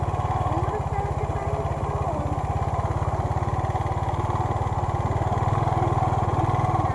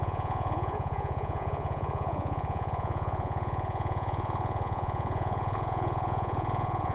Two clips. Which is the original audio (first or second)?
first